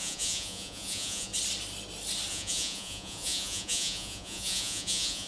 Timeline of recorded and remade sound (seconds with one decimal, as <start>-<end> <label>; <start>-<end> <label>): 0.0-1.3 remade; 1.3-2.3 recorded; 2.3-5.3 remade